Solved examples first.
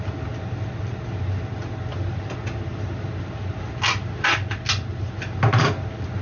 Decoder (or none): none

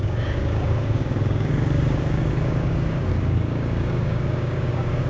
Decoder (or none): codec, DAC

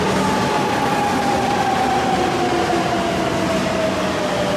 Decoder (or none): none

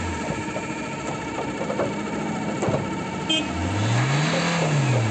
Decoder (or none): none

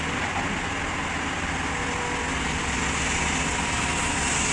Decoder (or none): none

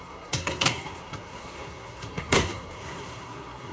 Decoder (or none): codec, SNAC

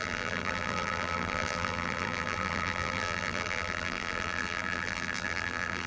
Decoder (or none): vocoder, BigVGAN v2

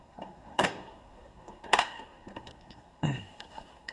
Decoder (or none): codec, SNAC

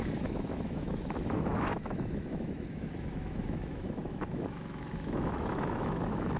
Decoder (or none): autoencoder, DAC-VAE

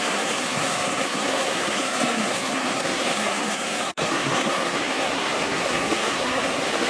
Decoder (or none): codec, SNAC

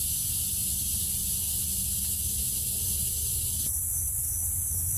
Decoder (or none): none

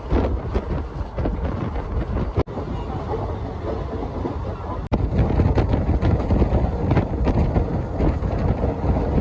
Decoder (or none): none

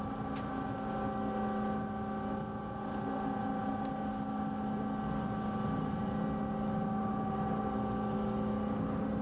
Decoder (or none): none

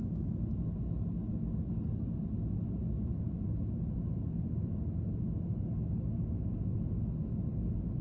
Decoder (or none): none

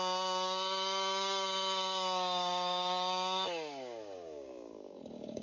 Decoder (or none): codec, DAC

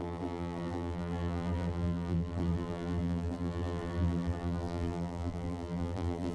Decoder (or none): vocoder, BigVGAN v2